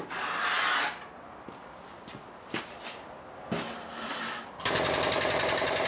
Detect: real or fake real